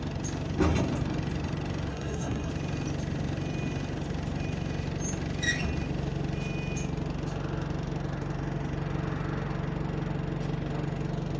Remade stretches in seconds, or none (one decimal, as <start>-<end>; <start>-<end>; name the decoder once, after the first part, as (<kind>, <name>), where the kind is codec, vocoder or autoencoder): 1.9-2.5 (codec, SNAC)